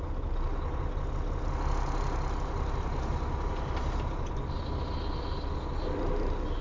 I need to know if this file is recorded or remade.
recorded